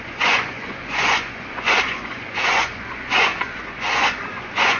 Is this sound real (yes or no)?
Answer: no